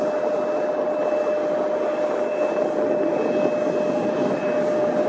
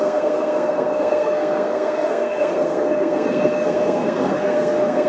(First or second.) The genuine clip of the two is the first